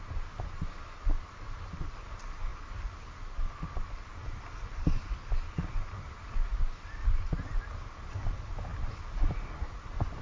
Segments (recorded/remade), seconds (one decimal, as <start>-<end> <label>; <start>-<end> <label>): 0.0-10.2 recorded